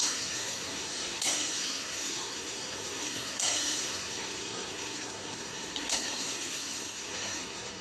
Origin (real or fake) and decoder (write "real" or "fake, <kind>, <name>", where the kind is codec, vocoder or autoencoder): fake, codec, SNAC